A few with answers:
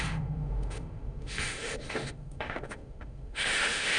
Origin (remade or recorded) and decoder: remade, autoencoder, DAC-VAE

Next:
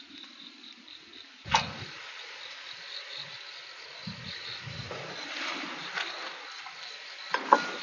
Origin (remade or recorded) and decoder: recorded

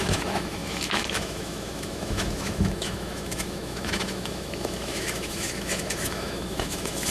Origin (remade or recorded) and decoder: remade, autoencoder, DAC-VAE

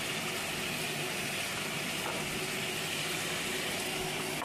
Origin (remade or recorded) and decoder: recorded